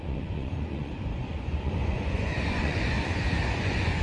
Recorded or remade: remade